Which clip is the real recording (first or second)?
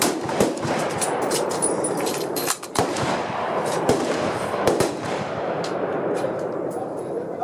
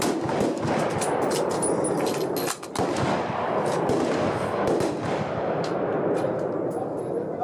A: second